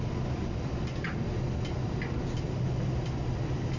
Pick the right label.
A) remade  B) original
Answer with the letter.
B